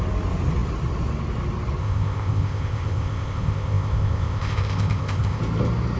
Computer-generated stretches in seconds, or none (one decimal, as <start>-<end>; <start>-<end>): 1.8-5.4